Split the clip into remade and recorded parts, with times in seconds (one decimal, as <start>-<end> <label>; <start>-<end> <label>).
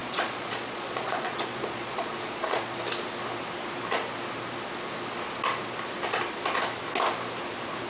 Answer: 0.0-2.8 remade; 2.8-7.9 recorded